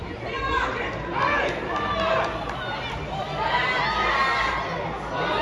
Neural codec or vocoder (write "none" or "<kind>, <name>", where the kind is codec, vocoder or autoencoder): none